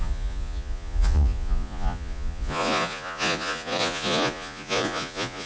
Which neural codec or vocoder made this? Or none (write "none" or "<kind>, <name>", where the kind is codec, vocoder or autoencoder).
vocoder, Vocos